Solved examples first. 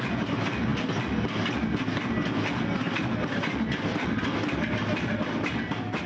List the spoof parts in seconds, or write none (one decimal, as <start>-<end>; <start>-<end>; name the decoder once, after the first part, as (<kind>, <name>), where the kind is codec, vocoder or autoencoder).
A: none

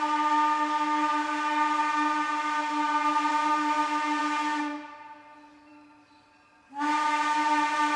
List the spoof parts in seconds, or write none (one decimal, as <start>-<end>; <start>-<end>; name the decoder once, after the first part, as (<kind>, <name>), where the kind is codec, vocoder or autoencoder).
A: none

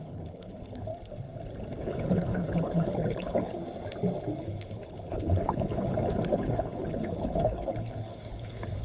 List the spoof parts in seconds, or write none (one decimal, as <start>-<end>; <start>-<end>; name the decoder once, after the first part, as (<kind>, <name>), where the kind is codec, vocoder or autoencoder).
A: 0.0-0.9 (codec, HILCodec); 1.8-3.6; 4.4-8.8